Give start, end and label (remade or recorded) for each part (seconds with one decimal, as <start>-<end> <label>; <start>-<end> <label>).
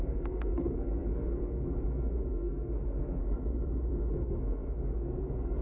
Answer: 0.0-3.2 remade; 3.2-4.1 recorded; 4.1-5.6 remade